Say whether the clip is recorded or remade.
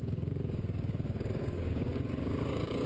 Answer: remade